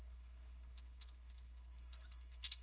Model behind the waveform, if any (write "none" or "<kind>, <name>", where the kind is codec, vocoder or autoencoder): codec, SNAC